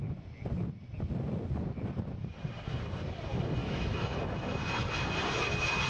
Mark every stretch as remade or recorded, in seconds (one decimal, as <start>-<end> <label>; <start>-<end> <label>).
0.0-3.6 recorded; 3.6-4.2 remade; 4.2-5.9 recorded